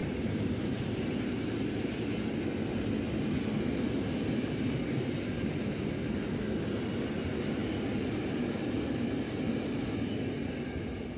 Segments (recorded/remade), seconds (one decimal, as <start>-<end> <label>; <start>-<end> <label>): 0.0-11.2 recorded